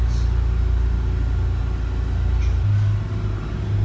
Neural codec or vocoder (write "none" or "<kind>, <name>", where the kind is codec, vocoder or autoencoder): none